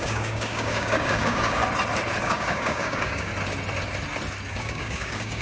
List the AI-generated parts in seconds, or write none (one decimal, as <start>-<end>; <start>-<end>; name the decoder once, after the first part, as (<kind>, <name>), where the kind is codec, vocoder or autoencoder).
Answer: 0.0-1.6 (codec, DAC); 2.2-3.3; 4.5-5.4